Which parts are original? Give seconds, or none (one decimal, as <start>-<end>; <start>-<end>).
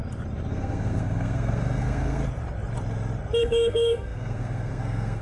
0.0-0.5; 2.2-3.4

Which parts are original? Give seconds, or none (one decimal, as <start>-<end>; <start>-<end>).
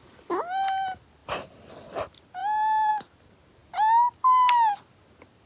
0.0-1.2; 1.7-5.5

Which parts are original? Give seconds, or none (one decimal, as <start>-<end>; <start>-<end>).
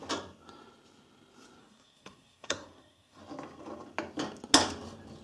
0.0-1.6; 3.2-5.2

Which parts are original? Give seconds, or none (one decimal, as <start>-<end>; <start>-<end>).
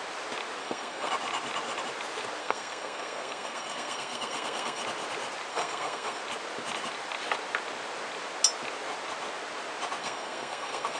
0.0-0.6; 1.1-2.4; 4.8-5.5; 6.2-10.0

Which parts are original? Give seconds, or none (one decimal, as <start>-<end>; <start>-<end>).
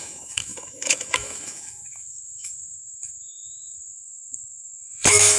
none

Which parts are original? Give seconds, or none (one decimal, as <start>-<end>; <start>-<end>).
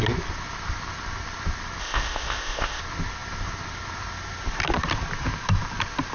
0.0-1.8; 2.8-6.1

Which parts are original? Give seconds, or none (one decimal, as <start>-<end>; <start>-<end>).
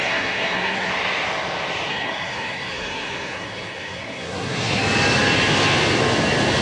0.9-1.9; 4.8-6.6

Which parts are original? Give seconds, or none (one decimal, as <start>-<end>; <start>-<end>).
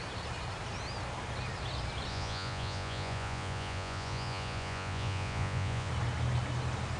0.0-2.1; 5.9-7.0